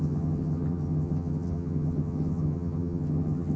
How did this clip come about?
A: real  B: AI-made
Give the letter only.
B